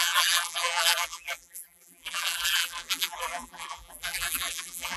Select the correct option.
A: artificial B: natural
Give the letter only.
A